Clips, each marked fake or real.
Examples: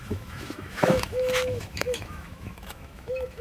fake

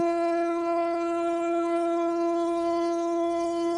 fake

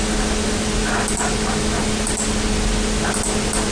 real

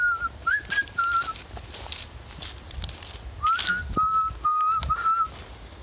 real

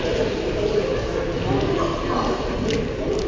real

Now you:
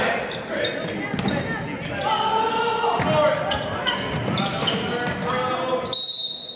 real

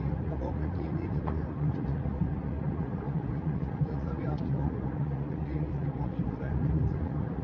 fake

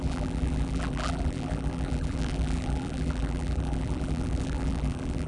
fake